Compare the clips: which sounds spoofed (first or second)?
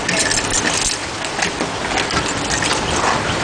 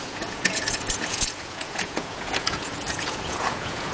second